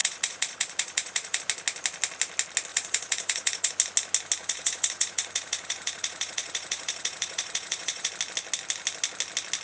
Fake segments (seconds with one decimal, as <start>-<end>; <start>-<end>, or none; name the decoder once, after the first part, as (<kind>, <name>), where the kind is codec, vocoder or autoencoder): 0.0-1.4 (vocoder, Vocos); 2.7-3.7; 4.4-8.1